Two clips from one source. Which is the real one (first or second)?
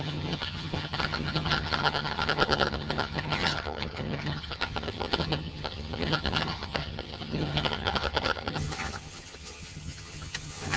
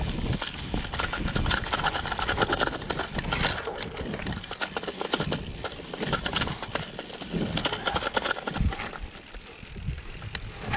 second